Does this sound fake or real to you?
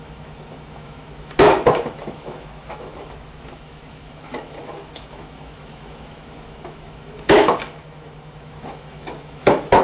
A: fake